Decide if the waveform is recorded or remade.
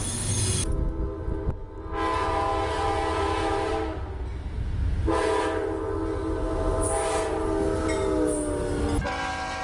recorded